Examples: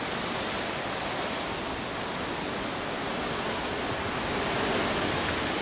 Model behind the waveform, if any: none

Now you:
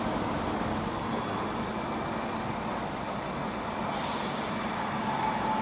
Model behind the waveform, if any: none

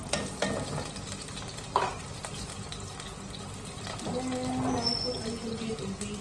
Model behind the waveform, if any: none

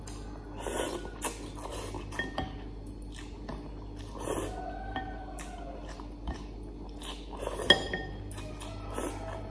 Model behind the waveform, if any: none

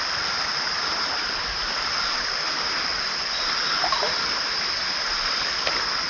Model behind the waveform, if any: none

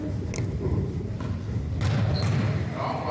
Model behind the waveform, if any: none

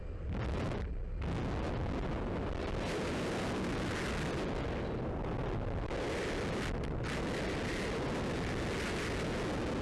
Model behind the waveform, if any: none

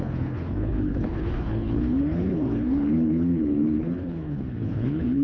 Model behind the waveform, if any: codec, HILCodec